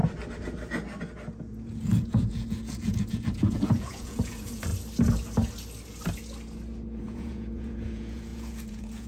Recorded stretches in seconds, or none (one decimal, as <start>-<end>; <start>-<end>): 0.0-1.4; 4.7-7.0